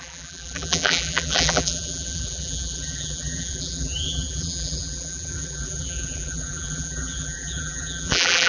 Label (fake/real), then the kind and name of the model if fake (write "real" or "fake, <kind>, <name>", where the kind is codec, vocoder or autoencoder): fake, vocoder, BigVGAN v2